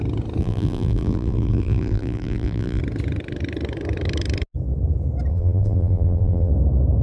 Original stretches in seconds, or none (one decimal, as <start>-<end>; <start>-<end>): 0.0-0.4; 2.8-5.3; 6.5-7.0